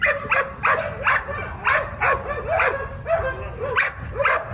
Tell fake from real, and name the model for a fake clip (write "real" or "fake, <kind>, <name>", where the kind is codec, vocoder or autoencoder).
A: real